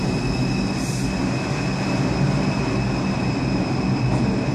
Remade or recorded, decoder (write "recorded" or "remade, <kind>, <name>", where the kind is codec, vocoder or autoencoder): recorded